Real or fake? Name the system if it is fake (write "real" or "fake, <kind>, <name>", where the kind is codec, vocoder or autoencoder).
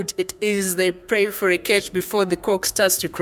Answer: fake, codec, SNAC